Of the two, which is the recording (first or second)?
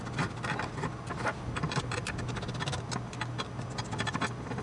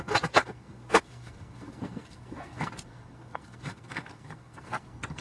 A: first